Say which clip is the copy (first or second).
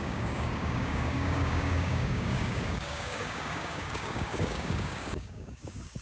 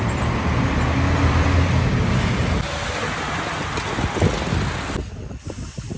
first